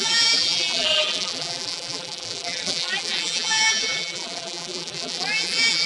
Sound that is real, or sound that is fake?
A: fake